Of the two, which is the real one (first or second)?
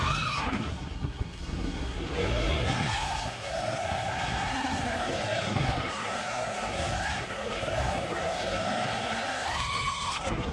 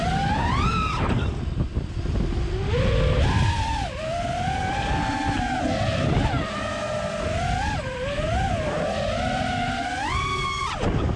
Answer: second